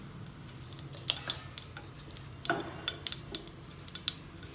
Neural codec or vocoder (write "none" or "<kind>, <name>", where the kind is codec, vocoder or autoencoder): none